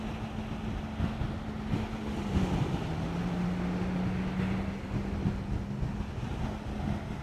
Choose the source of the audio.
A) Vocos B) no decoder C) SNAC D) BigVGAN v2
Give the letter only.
B